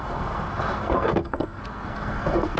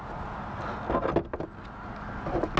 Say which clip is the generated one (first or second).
first